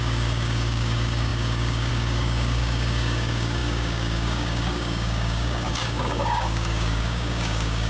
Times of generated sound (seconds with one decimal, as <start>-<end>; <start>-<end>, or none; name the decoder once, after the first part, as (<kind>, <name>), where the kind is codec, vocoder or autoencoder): 0.0-7.9 (codec, DAC)